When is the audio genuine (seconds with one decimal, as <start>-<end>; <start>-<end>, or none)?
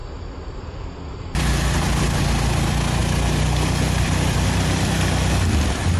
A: 2.2-3.0